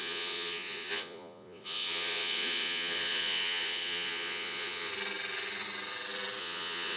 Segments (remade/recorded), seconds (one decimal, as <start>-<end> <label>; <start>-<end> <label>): 0.0-4.9 remade; 4.9-6.4 recorded; 6.4-7.0 remade